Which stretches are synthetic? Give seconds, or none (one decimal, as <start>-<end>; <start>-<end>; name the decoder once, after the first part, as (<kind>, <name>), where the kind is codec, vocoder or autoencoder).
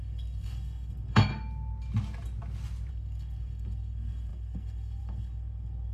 0.0-1.3 (codec, SNAC); 2.9-5.9